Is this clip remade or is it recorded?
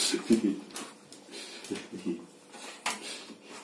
recorded